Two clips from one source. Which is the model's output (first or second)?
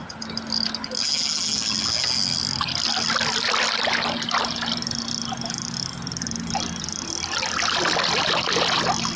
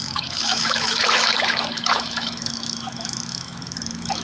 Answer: second